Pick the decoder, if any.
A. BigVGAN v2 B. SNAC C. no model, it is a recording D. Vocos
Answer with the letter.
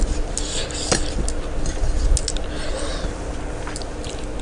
C